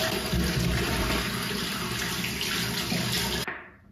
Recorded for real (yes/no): yes